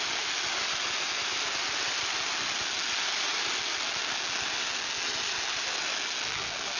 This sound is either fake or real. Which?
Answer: real